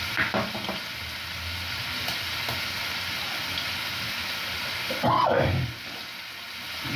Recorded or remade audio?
recorded